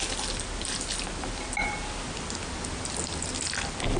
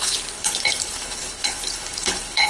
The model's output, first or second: second